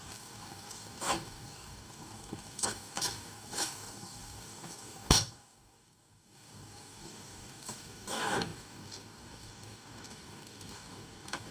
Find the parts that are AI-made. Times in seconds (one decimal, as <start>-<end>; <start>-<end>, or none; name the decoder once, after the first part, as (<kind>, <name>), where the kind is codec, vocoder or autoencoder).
0.0-11.5 (codec, DAC)